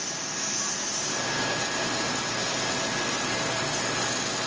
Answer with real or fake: real